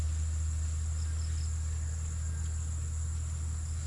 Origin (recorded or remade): recorded